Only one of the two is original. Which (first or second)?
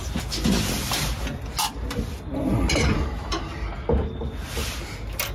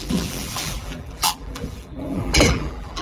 first